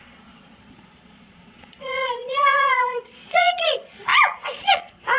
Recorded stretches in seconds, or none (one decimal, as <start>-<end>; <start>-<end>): none